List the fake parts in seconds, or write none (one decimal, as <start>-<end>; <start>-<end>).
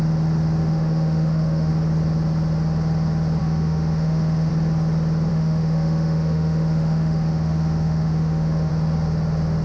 0.6-1.7; 3.4-4.5; 5.3-8.7